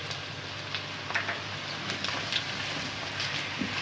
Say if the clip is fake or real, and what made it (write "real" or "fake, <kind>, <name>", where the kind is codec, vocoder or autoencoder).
real